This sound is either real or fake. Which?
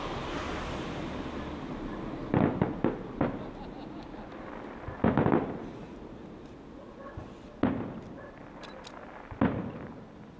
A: real